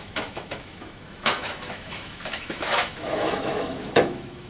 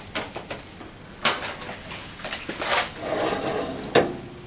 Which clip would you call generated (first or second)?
first